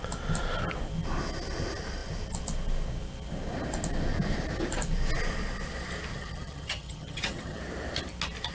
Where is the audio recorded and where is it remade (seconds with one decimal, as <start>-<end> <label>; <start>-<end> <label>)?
0.0-6.1 recorded; 6.1-7.6 remade; 7.6-8.5 recorded